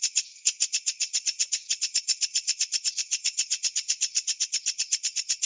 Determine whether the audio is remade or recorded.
remade